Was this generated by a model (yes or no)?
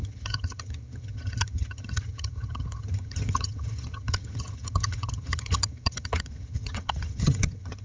yes